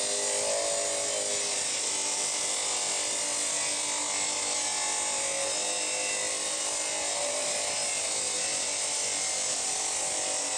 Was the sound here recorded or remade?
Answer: recorded